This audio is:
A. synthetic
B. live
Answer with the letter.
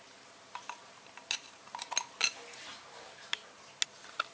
B